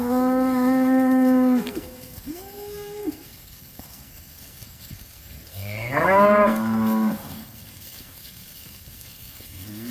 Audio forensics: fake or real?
fake